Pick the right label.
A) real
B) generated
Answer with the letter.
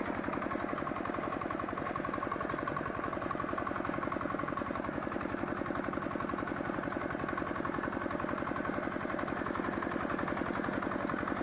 A